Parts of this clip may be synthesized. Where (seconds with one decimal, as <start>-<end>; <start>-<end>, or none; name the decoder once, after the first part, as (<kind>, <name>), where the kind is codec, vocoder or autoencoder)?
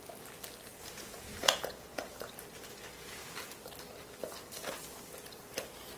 0.7-2.3 (vocoder, Vocos)